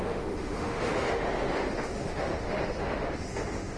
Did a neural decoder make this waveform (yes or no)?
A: yes